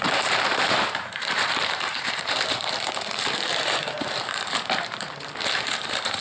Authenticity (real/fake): fake